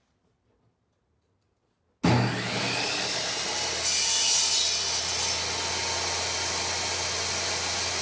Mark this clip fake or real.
real